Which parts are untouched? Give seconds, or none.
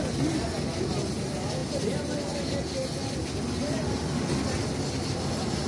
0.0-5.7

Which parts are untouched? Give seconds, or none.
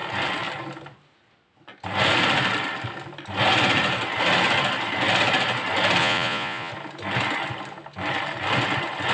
0.0-6.0; 6.7-9.1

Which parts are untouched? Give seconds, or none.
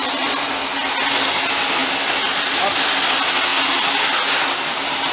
0.0-5.1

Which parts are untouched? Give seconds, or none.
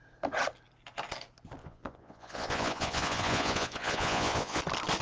0.0-1.6; 4.6-5.0